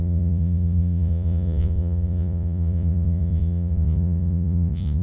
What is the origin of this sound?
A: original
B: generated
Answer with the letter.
B